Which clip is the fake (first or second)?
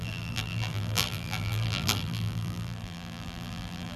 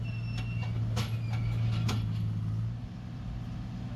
first